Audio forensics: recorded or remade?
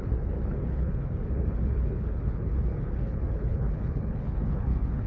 remade